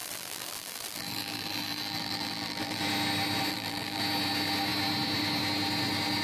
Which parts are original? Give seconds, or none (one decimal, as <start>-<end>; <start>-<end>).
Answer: 2.8-3.5; 4.0-6.2